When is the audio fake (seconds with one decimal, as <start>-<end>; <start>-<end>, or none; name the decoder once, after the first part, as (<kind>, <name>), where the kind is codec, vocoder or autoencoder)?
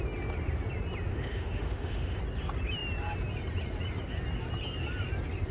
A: 1.1-2.2 (autoencoder, DAC-VAE)